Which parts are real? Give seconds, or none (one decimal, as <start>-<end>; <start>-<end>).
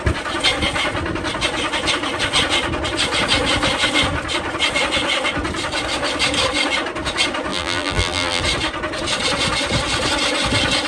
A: 0.0-7.5; 8.4-10.9